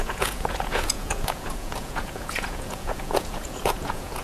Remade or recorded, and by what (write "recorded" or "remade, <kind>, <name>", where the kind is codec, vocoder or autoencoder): remade, vocoder, Vocos